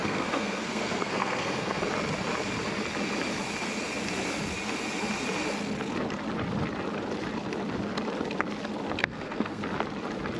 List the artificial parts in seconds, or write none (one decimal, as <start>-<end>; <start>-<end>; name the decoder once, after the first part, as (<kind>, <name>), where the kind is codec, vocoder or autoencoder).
0.0-1.8 (codec, SNAC); 9.0-9.6